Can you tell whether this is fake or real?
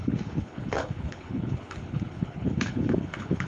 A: fake